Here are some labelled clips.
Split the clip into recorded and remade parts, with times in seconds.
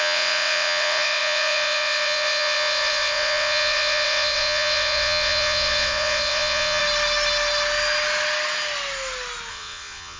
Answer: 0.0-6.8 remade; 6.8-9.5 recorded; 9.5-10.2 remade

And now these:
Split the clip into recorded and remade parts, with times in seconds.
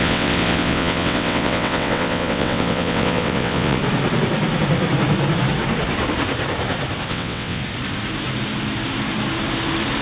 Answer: 0.0-3.8 remade; 3.8-7.1 recorded; 7.1-7.6 remade; 7.6-10.0 recorded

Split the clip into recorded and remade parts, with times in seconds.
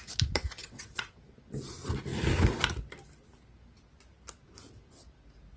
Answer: 0.0-0.6 recorded; 0.6-1.2 remade; 1.2-5.6 recorded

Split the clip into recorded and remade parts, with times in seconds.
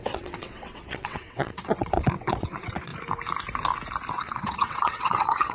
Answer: 0.0-2.9 remade; 2.9-4.1 recorded; 4.1-5.5 remade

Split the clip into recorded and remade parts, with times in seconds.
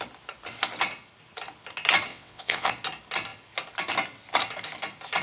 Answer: 0.0-2.1 recorded; 2.1-2.7 remade; 2.7-5.2 recorded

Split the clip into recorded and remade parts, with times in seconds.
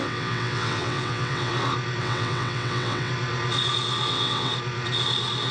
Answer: 0.0-1.5 remade; 1.5-2.0 recorded; 2.0-3.1 remade; 3.1-4.1 recorded; 4.1-4.5 remade; 4.5-5.5 recorded